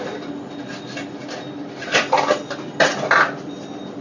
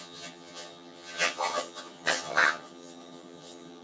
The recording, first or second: first